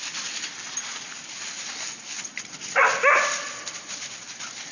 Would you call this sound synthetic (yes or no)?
no